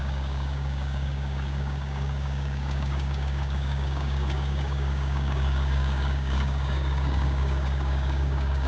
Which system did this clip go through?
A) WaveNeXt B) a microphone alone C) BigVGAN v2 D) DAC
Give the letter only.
D